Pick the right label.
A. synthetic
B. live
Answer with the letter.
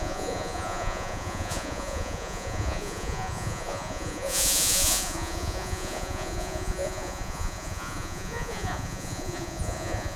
A